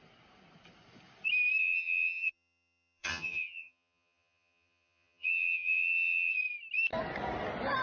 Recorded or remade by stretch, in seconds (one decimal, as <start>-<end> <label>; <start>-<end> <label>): 0.0-1.6 recorded; 1.6-6.3 remade; 6.3-7.8 recorded